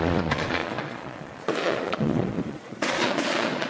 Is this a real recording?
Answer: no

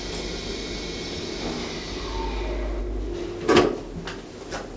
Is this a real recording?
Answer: yes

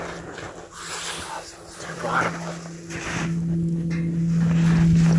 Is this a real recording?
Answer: yes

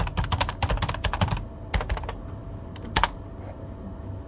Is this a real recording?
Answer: yes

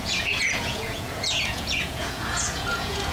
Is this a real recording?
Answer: no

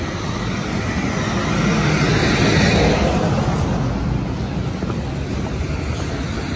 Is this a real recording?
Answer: yes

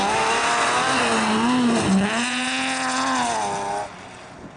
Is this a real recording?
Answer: yes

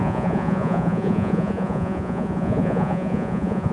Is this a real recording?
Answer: no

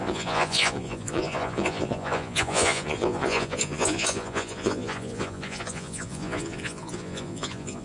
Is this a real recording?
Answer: no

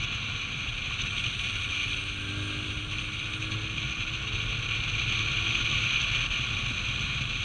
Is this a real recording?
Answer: yes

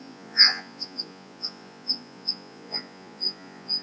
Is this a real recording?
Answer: no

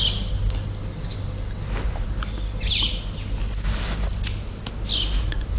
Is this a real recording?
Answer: yes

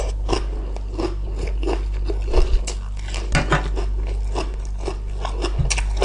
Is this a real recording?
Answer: yes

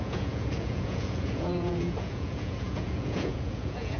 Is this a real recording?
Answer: no